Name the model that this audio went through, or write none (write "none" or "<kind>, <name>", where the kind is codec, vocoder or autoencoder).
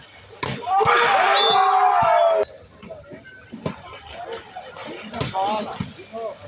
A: none